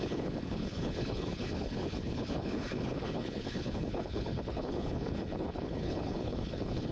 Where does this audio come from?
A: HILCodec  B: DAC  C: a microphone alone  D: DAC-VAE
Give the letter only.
A